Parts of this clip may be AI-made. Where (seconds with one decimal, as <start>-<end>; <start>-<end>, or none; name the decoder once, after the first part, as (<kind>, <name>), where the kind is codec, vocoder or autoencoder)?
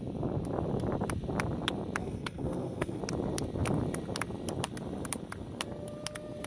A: 2.0-3.0 (codec, SNAC)